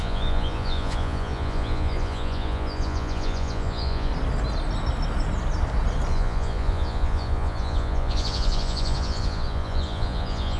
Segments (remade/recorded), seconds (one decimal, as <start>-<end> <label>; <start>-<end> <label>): 0.0-4.1 remade; 4.1-6.1 recorded; 6.1-10.6 remade